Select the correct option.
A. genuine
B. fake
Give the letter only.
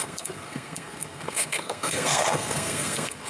B